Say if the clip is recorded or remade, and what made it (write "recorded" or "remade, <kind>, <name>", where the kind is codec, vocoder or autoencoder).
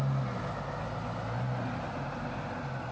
recorded